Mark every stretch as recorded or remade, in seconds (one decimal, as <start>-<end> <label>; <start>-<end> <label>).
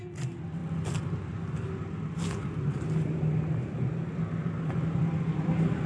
0.0-5.9 recorded